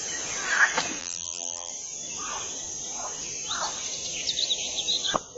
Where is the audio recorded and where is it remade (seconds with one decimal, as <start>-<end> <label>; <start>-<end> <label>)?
0.0-1.0 recorded; 1.0-1.7 remade; 1.7-5.4 recorded